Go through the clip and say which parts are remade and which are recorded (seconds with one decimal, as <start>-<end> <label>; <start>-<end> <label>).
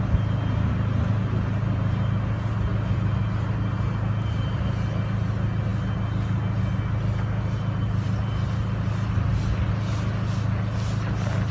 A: 0.0-11.5 recorded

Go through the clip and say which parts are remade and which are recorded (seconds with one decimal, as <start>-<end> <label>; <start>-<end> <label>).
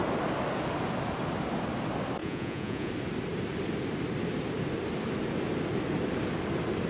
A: 0.0-2.2 recorded; 2.2-2.9 remade; 2.9-6.9 recorded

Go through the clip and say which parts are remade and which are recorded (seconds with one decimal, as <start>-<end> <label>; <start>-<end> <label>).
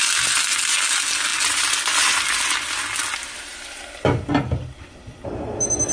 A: 0.0-5.9 recorded